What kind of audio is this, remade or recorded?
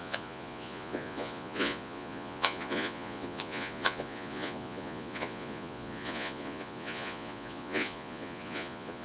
remade